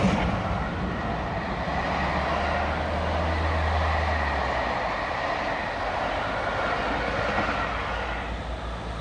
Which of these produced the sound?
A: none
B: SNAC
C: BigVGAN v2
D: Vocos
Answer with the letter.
A